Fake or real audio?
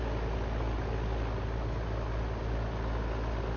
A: real